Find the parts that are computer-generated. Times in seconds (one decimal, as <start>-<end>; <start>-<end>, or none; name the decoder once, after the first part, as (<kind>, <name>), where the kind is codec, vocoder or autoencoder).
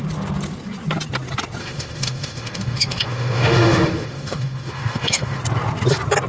1.6-5.4 (autoencoder, DAC-VAE)